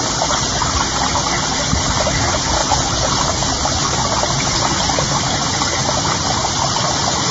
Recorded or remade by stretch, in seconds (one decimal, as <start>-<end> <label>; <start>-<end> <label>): 0.0-7.3 recorded